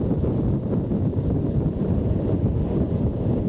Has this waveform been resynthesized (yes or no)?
no